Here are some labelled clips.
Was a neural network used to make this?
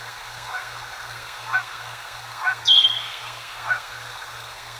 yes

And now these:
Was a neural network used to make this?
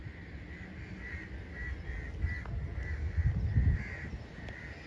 no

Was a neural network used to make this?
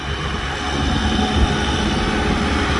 no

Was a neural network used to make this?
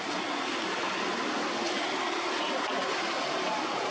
no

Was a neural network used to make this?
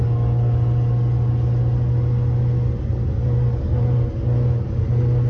no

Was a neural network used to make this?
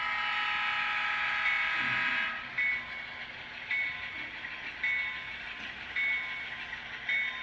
no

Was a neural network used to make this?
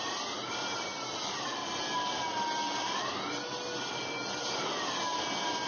no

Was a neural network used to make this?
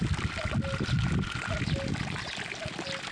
no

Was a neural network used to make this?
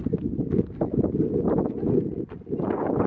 no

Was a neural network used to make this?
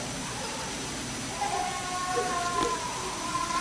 no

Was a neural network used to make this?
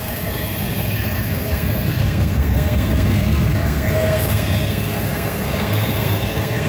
yes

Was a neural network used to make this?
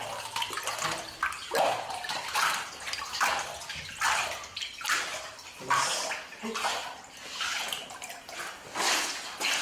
no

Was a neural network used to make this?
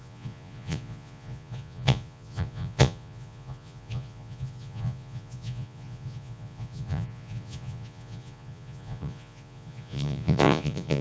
yes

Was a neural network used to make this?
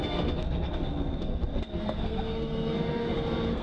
yes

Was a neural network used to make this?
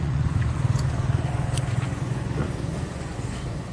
yes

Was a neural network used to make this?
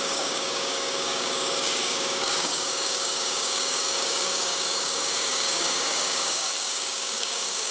yes